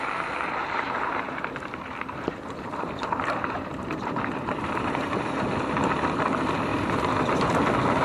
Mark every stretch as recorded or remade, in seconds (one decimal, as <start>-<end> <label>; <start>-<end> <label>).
0.0-0.6 recorded; 0.6-5.4 remade; 5.4-6.7 recorded; 6.7-7.5 remade; 7.5-8.0 recorded